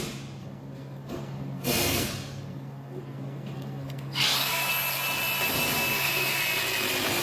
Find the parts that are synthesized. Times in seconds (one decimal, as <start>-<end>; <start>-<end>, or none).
0.4-4.7; 5.9-6.4